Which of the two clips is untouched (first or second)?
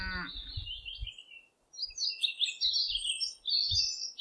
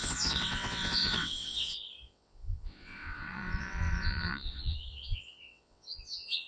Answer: first